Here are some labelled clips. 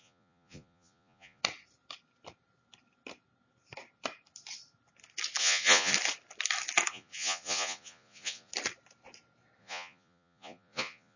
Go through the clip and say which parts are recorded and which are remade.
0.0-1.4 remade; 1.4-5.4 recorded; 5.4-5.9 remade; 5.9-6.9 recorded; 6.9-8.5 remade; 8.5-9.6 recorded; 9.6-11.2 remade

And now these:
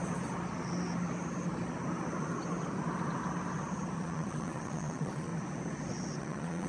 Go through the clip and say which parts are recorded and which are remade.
0.0-4.0 recorded; 4.0-5.3 remade; 5.3-6.2 recorded; 6.2-6.7 remade

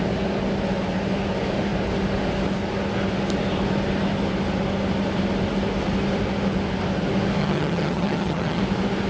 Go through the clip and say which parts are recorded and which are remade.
0.0-7.4 recorded; 7.4-8.6 remade; 8.6-9.1 recorded

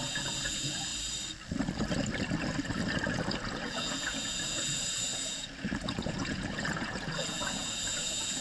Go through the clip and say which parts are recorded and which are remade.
0.0-0.9 remade; 0.9-3.1 recorded; 3.1-8.4 remade

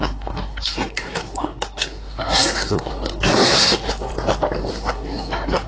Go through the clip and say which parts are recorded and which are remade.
0.0-4.1 remade; 4.1-4.7 recorded; 4.7-5.7 remade

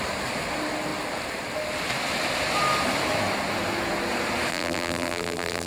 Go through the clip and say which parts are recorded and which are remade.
0.0-4.5 recorded; 4.5-5.7 remade